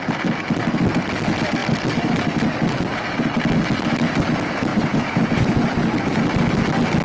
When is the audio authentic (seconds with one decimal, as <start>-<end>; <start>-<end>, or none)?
0.0-4.7; 5.9-7.0